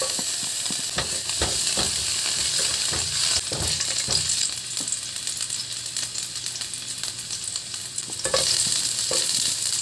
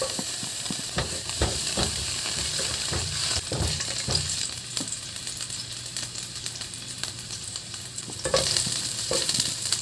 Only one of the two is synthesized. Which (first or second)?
second